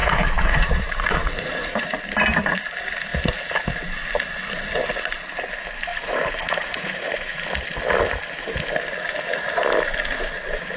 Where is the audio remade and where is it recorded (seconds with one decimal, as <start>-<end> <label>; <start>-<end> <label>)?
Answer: 0.0-2.0 remade; 2.0-5.9 recorded; 5.9-7.5 remade; 7.5-10.8 recorded